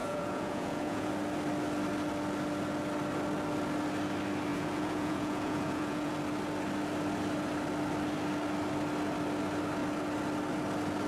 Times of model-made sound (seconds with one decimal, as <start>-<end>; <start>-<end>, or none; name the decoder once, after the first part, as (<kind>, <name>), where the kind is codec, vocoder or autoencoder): 0.0-1.1 (vocoder, Vocos); 4.5-6.1